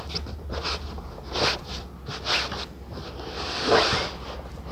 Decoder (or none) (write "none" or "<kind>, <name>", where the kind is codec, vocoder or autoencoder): none